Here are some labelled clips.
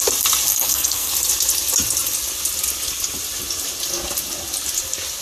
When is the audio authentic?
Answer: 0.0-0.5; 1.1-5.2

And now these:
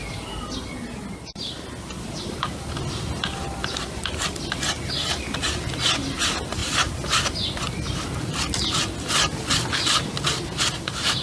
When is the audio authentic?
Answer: 0.0-11.2

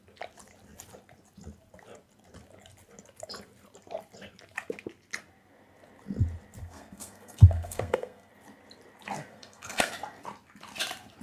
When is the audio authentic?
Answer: 0.0-6.6; 8.3-9.3; 9.9-11.2

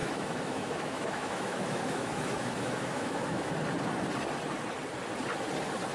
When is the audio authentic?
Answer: 3.5-5.9

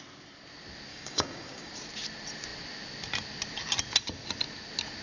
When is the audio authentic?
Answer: 0.0-0.9; 1.7-5.0

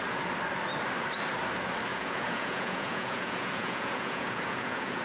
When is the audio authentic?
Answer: 0.0-1.9